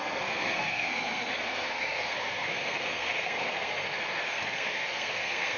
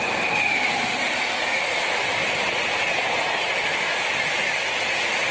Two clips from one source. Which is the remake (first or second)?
first